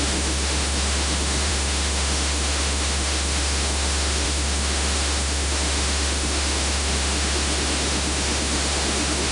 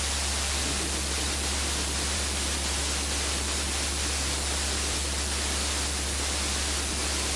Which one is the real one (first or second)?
second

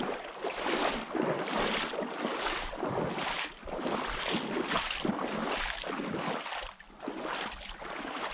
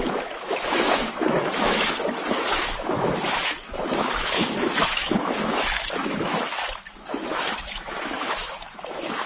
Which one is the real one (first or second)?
first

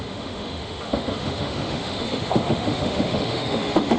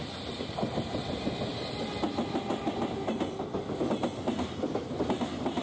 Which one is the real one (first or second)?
second